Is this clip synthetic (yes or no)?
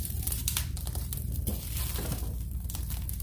yes